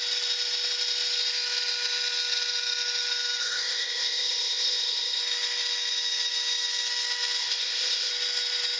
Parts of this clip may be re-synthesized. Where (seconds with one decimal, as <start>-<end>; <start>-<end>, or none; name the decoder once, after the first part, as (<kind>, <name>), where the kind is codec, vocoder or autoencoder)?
3.4-5.2 (codec, ZipCodec); 7.4-8.1